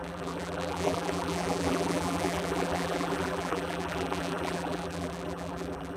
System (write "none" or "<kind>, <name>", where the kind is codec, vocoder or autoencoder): vocoder, BigVGAN v2